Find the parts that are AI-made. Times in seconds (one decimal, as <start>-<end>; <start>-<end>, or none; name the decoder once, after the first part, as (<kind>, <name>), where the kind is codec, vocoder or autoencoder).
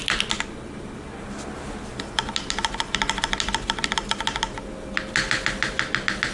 none